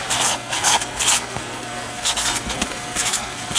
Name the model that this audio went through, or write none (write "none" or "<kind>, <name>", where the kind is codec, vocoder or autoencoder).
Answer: codec, SNAC